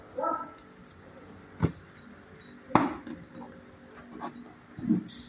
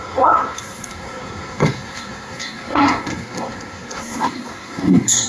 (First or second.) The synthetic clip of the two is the second